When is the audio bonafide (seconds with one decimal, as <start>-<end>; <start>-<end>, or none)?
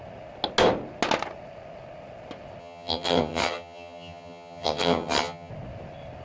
0.0-2.6; 5.5-6.2